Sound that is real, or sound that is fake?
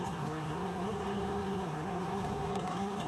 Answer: fake